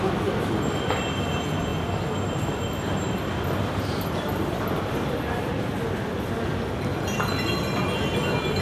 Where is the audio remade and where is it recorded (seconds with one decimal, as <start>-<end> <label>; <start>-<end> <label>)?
0.0-8.6 recorded